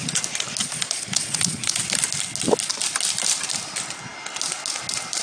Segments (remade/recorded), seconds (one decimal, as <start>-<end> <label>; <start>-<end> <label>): 0.0-0.6 recorded; 0.6-1.8 remade; 1.8-5.2 recorded